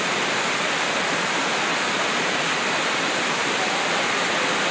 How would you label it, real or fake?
real